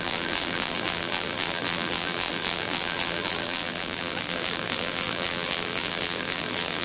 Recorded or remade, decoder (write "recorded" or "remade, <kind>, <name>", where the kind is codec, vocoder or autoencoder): remade, vocoder, BigVGAN v2